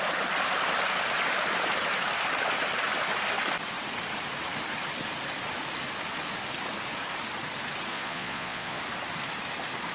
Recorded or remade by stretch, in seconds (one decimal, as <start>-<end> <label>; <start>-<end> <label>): 0.0-7.9 recorded; 7.9-8.8 remade; 8.8-9.9 recorded